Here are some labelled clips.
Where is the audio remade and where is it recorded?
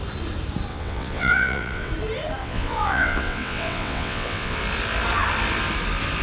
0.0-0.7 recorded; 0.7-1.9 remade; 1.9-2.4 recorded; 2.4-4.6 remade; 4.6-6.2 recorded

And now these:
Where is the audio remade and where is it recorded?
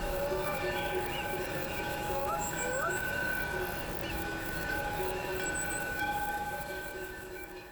0.0-3.3 remade; 3.3-4.1 recorded; 4.1-5.3 remade; 5.3-5.8 recorded; 5.8-7.7 remade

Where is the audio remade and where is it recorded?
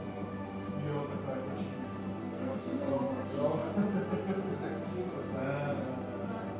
0.0-2.2 recorded; 2.2-3.1 remade; 3.1-6.6 recorded